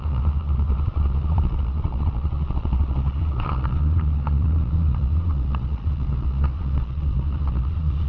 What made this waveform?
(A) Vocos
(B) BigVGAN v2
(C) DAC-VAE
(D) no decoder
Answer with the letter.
A